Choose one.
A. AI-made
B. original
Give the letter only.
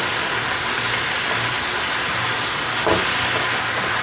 B